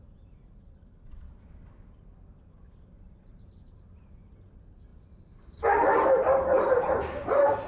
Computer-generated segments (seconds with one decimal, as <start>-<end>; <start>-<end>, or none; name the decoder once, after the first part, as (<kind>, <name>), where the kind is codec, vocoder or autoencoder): none